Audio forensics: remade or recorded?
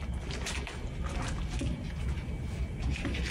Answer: recorded